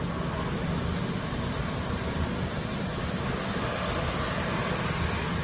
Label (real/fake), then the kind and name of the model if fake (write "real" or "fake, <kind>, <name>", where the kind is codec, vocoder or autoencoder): real